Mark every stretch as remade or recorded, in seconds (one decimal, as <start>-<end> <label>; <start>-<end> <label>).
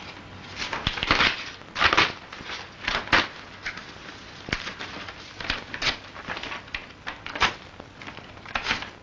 0.0-9.0 recorded